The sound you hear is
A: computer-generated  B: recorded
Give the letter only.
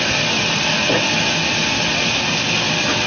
B